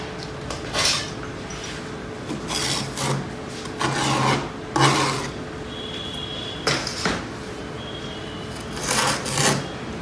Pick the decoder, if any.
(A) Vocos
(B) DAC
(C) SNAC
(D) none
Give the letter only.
D